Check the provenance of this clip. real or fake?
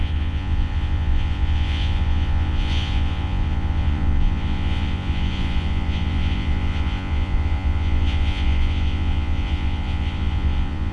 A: fake